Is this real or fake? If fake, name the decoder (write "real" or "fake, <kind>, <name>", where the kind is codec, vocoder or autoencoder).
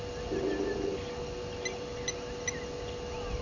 real